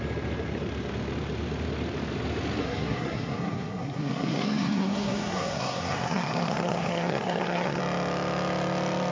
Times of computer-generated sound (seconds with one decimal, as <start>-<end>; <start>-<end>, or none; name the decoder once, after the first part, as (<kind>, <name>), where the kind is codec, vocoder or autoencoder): 2.6-7.8 (codec, SNAC)